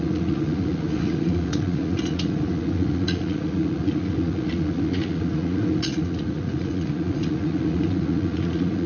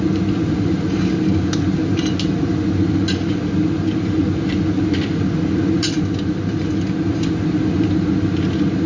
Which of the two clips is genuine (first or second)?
second